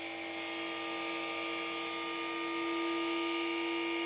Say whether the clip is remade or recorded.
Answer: recorded